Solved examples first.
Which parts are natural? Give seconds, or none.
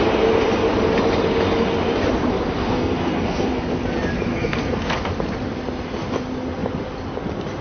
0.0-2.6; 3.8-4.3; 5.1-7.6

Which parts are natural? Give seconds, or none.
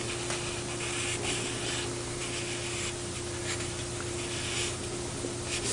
0.0-5.7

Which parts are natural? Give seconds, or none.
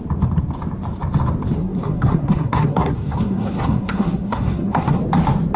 0.0-1.6; 5.0-5.6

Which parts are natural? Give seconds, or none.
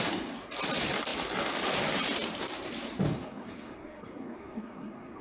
0.0-3.1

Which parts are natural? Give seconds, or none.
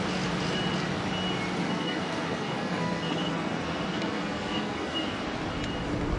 0.0-1.6; 5.2-6.2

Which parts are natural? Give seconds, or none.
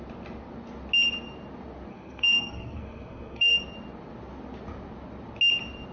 0.0-1.9; 3.6-5.9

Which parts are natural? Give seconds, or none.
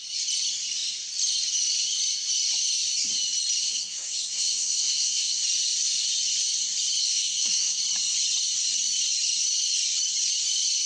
0.0-3.6; 5.4-7.0; 7.8-10.9